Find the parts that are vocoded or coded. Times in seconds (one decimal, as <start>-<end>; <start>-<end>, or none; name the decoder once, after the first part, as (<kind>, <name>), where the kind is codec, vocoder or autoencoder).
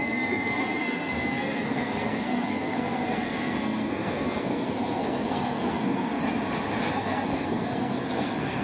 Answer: 0.0-6.2 (codec, SNAC); 6.9-8.6